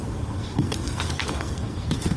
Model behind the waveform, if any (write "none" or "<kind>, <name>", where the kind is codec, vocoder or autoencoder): codec, SNAC